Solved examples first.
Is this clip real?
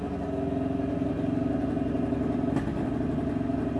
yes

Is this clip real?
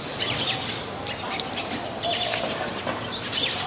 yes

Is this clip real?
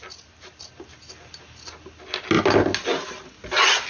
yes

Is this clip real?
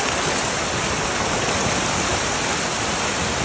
yes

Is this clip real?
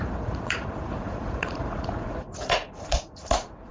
no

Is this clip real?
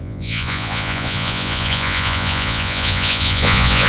no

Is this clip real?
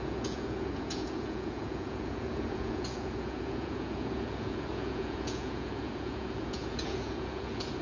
no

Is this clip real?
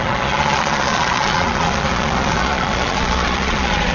no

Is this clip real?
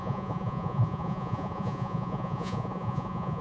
no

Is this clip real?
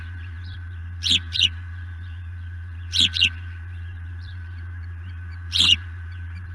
no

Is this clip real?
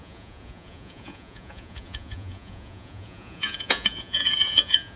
no